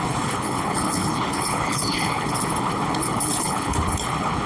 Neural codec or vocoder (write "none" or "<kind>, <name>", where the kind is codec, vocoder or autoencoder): codec, HILCodec